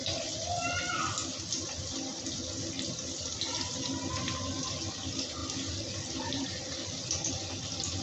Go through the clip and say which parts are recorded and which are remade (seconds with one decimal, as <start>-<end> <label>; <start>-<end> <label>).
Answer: 0.0-5.4 recorded; 5.4-7.3 remade; 7.3-8.0 recorded

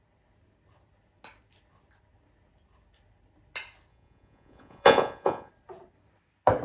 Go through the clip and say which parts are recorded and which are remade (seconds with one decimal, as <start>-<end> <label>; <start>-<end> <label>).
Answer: 0.0-3.9 recorded; 3.9-5.5 remade; 5.5-6.6 recorded

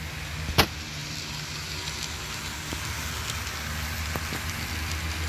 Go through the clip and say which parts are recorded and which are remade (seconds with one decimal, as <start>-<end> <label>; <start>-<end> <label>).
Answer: 0.0-5.3 recorded